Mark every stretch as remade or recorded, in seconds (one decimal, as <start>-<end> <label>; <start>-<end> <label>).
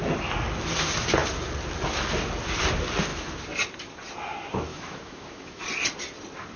0.0-4.7 recorded; 4.7-5.6 remade; 5.6-6.6 recorded